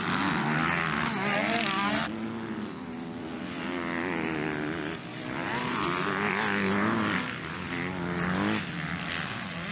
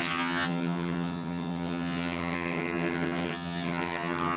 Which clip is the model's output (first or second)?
second